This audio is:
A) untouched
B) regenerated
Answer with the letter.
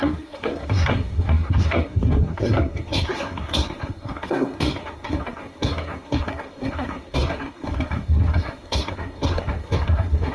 B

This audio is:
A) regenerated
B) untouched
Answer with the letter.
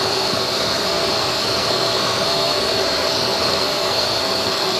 A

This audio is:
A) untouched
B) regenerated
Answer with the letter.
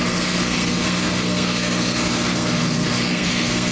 B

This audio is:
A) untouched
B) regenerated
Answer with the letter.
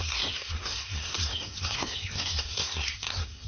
B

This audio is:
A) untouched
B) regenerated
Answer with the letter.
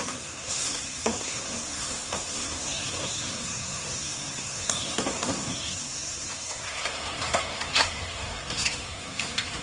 B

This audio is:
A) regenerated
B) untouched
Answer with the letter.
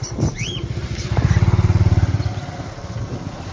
B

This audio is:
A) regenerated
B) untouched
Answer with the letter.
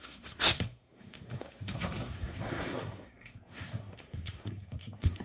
A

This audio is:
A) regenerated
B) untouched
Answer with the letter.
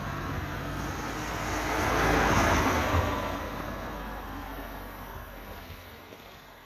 A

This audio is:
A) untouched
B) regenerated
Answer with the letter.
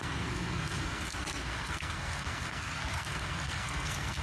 B